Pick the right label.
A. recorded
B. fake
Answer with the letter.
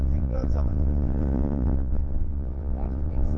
B